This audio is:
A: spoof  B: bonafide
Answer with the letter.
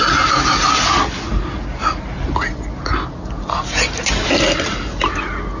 B